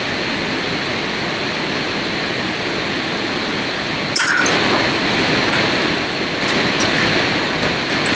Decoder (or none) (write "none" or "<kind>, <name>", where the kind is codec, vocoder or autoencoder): none